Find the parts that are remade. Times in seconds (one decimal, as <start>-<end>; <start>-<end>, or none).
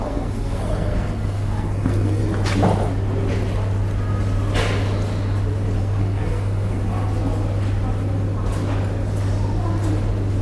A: 0.0-2.2; 5.8-6.8